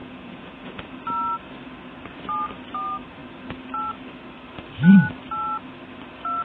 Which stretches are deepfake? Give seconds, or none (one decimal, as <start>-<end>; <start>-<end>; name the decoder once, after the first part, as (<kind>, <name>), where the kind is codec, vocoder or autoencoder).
0.0-0.8 (vocoder, Vocos)